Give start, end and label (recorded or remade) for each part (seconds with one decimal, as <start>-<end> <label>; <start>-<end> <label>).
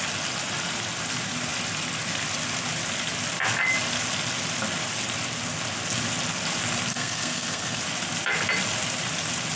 0.0-6.9 recorded; 6.9-7.8 remade; 7.8-9.6 recorded